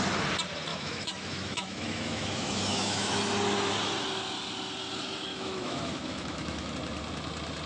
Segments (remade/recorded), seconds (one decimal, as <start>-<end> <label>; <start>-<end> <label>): 0.0-0.7 recorded; 0.7-3.2 remade; 3.2-5.3 recorded; 5.3-6.7 remade; 6.7-7.7 recorded